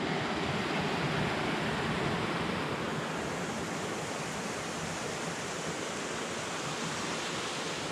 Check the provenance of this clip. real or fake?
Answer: real